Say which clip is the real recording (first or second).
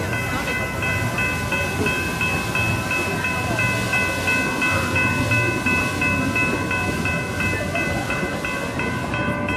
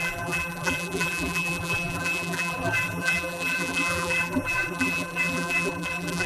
first